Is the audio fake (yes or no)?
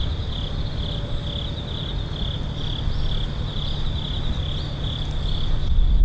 no